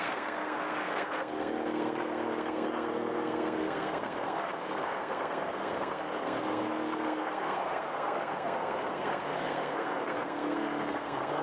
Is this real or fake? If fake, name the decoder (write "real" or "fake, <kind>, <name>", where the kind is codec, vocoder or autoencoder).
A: fake, codec, SNAC